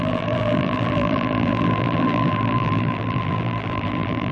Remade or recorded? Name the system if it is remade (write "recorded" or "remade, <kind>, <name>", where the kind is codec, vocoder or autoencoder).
remade, vocoder, BigVGAN v2